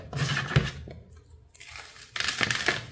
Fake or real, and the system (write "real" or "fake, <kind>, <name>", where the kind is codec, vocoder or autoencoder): real